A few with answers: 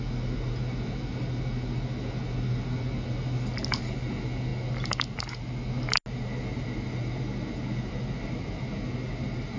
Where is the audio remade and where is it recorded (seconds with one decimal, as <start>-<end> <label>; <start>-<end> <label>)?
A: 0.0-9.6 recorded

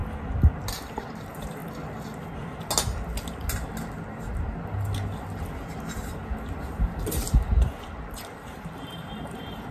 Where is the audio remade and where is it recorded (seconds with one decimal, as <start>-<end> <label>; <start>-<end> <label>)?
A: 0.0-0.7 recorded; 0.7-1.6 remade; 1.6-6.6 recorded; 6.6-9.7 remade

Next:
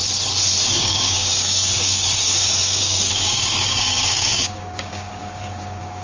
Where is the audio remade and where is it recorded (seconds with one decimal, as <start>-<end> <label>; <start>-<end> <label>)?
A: 0.0-0.8 recorded; 0.8-6.0 remade